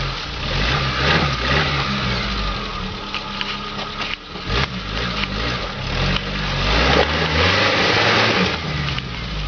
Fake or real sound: real